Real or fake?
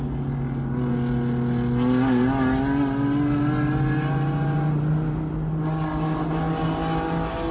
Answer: real